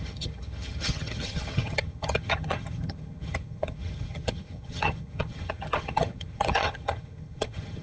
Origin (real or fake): fake